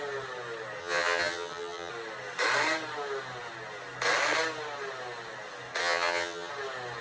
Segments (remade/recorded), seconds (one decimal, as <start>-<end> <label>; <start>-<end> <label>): 0.0-0.8 recorded; 0.8-1.9 remade; 1.9-5.8 recorded; 5.8-6.5 remade; 6.5-7.0 recorded